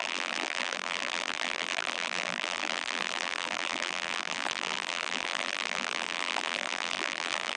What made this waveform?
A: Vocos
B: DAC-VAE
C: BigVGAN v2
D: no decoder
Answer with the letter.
C